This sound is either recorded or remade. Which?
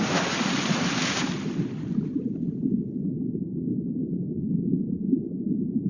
recorded